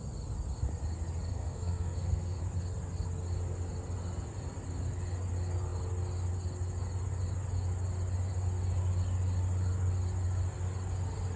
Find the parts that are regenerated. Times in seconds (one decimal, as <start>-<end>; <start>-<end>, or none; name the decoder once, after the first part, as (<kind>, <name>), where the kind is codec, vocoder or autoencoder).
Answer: 1.3-2.4 (codec, SNAC)